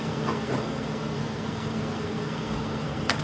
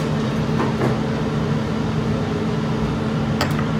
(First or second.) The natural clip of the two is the second